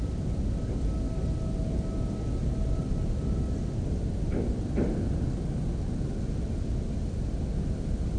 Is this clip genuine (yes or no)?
yes